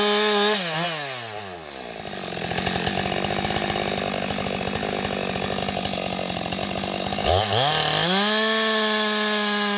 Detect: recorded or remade recorded